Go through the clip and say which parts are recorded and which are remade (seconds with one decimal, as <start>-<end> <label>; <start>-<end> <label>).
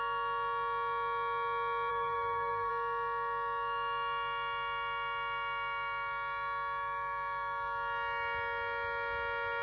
0.0-1.9 recorded; 1.9-2.7 remade; 2.7-9.6 recorded